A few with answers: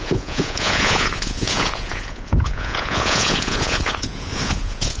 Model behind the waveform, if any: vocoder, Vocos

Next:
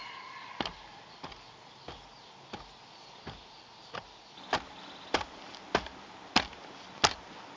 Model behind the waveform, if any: none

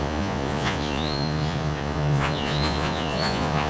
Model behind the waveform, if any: vocoder, Vocos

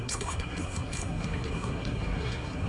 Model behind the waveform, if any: codec, SNAC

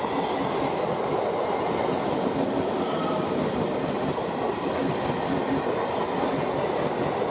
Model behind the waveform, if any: none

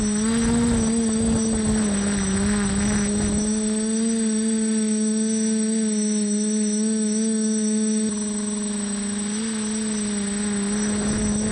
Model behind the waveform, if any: none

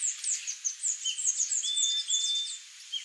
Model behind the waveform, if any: none